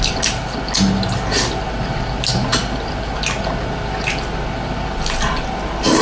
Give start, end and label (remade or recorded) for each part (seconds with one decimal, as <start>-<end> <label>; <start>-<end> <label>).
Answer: 0.0-6.0 recorded